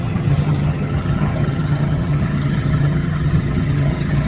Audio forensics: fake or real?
fake